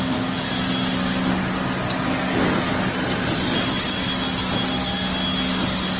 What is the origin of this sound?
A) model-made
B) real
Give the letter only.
B